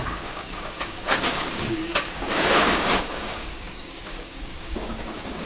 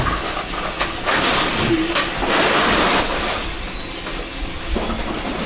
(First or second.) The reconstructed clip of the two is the first